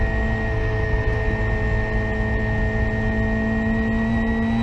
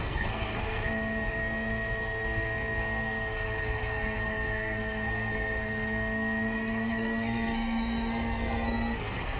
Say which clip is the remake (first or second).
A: second